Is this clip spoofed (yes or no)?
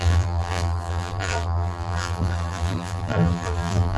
yes